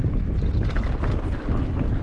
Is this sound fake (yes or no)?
no